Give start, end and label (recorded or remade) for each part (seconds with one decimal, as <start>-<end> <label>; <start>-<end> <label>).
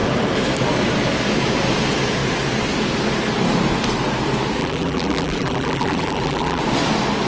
0.0-4.6 recorded; 4.6-6.6 remade; 6.6-7.3 recorded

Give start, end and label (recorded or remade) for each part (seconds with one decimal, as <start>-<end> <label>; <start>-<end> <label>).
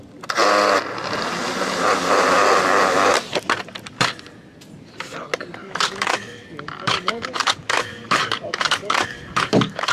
0.0-5.6 recorded; 5.6-9.9 remade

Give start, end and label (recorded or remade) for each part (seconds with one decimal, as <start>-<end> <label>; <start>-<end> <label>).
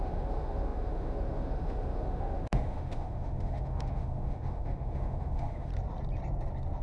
0.0-5.7 remade; 5.7-6.8 recorded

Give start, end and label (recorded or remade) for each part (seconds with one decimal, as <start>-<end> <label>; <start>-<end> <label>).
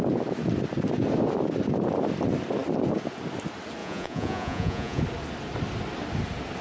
0.0-3.8 recorded; 3.8-5.0 remade; 5.0-6.6 recorded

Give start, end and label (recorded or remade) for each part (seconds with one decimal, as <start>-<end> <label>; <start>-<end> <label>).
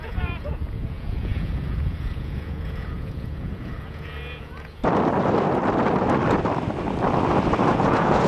0.0-4.8 remade; 4.8-7.7 recorded; 7.7-8.3 remade